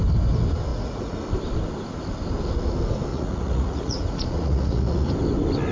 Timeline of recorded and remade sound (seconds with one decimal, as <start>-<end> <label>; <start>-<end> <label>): 0.0-0.7 recorded; 0.7-1.2 remade; 1.2-3.1 recorded; 3.1-5.1 remade; 5.1-5.7 recorded